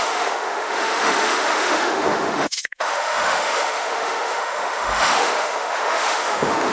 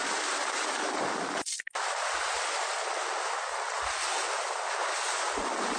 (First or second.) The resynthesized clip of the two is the first